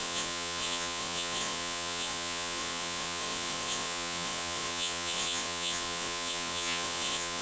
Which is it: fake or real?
fake